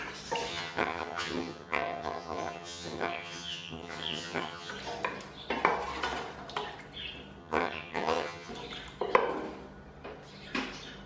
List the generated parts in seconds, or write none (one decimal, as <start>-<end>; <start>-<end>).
0.5-4.7; 7.4-8.5